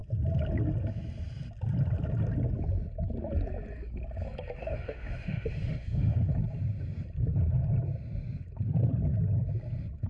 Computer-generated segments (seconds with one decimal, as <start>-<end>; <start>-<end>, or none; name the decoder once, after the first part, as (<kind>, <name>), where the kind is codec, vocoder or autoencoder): 4.6-6.3 (autoencoder, DAC-VAE)